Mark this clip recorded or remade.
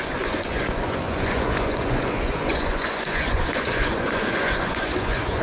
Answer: remade